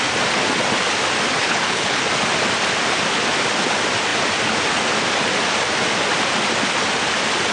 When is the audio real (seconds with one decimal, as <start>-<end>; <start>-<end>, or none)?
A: 0.0-1.4; 2.0-7.5